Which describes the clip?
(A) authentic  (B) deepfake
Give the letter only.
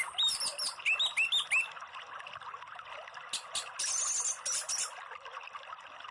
A